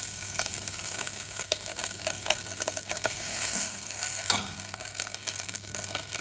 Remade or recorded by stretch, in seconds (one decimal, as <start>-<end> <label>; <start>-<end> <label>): 0.0-6.2 remade